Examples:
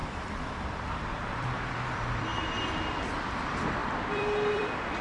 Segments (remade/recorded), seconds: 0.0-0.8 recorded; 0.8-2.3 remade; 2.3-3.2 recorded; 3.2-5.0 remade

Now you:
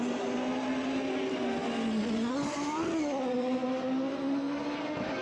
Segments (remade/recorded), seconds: 0.0-5.2 recorded

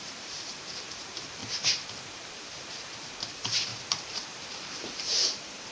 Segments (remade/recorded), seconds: 0.0-1.4 remade; 1.4-3.3 recorded; 3.3-5.7 remade

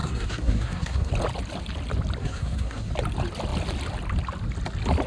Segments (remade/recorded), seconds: 0.0-1.1 remade; 1.1-2.2 recorded; 2.2-2.9 remade; 2.9-5.1 recorded